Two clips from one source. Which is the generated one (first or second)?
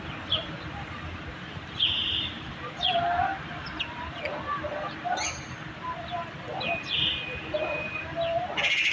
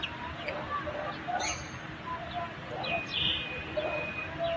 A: first